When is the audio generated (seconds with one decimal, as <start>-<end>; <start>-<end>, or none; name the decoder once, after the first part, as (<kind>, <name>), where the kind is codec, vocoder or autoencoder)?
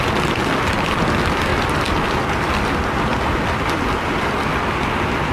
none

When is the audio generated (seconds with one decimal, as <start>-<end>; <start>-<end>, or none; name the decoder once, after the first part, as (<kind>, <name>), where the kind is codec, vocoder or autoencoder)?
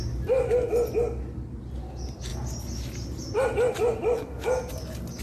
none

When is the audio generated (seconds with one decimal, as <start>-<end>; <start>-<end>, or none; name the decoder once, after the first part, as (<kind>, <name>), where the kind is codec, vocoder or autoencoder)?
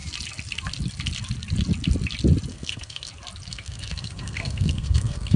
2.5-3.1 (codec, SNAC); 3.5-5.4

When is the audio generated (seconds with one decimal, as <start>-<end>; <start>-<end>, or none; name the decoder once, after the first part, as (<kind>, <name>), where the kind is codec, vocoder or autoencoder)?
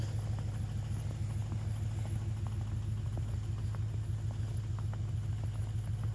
none